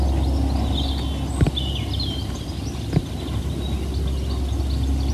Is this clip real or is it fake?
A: real